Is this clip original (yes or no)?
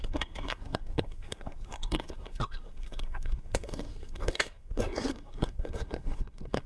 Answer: no